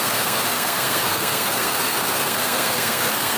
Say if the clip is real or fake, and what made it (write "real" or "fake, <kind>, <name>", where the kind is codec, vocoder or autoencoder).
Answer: fake, codec, SNAC